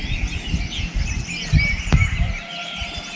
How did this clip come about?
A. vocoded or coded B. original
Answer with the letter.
B